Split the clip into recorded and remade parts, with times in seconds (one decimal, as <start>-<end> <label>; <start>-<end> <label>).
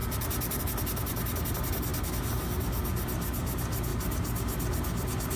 0.0-0.6 remade; 0.6-3.9 recorded; 3.9-5.4 remade